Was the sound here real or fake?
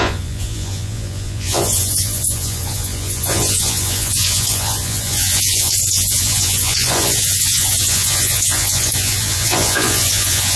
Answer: fake